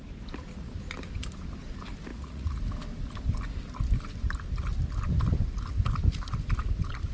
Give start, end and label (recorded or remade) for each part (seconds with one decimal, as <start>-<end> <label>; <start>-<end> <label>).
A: 0.0-2.1 recorded; 2.1-2.6 remade; 2.6-7.1 recorded